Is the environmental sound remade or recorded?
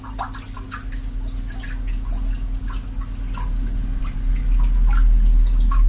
recorded